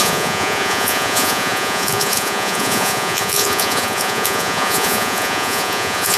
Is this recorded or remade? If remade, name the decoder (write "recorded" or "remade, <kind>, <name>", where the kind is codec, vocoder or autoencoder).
remade, vocoder, Vocos